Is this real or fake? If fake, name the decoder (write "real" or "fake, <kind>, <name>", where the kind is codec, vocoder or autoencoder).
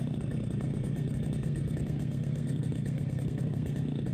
fake, codec, SNAC